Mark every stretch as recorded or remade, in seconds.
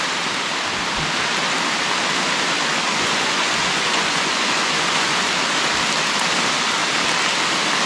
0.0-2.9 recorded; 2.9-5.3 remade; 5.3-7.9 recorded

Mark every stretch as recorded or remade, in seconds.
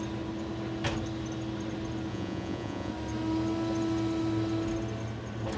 0.0-2.1 recorded; 2.1-2.9 remade; 2.9-5.6 recorded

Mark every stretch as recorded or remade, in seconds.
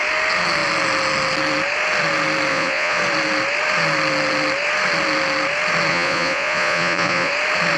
0.0-2.5 recorded; 2.5-3.0 remade; 3.0-5.9 recorded; 5.9-7.3 remade; 7.3-7.8 recorded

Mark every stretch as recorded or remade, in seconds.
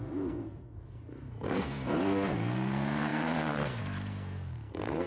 0.0-5.1 remade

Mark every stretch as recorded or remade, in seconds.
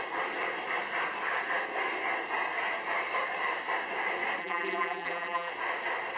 0.0-4.4 recorded; 4.4-5.5 remade; 5.5-6.2 recorded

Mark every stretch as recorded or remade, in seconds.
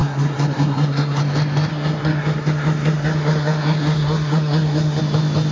0.0-1.2 remade; 1.2-1.7 recorded; 1.7-5.0 remade; 5.0-5.5 recorded